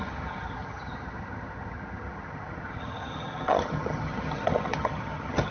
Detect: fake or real fake